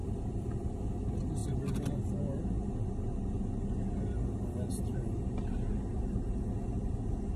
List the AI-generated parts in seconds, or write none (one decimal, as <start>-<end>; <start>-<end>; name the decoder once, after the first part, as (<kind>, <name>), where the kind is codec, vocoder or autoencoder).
0.0-0.7 (vocoder, BigVGAN v2)